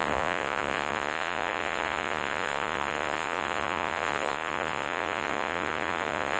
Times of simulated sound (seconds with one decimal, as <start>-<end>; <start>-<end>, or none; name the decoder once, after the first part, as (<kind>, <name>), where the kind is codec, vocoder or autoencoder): 0.0-6.4 (vocoder, Vocos)